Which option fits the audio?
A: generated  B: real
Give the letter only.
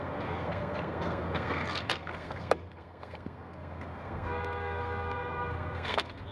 A